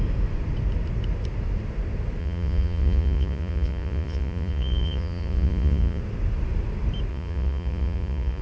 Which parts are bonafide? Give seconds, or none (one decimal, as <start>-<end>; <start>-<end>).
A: 0.0-2.2; 6.0-7.1